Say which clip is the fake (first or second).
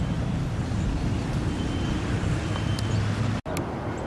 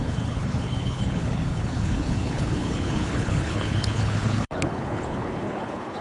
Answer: second